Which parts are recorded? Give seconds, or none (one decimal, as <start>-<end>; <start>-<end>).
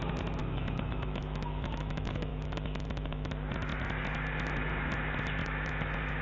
0.0-0.4; 3.3-5.4